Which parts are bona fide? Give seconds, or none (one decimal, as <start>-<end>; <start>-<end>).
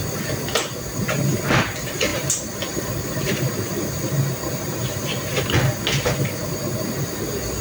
0.0-7.6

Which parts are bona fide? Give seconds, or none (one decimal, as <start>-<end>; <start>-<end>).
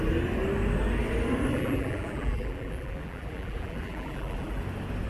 0.0-1.5; 4.6-5.1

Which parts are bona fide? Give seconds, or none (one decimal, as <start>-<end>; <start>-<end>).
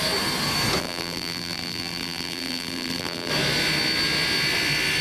0.0-0.8; 3.3-5.0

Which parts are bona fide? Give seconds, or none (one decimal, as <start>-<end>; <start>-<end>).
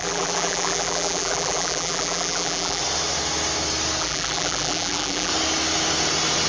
2.8-4.0; 5.3-6.5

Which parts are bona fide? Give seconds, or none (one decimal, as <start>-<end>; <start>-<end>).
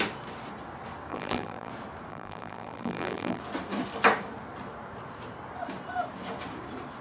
0.0-1.1; 1.7-2.1; 3.4-7.0